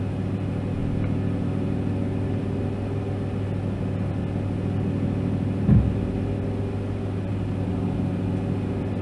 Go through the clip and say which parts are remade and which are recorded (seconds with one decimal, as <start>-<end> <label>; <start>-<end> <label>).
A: 0.0-9.0 recorded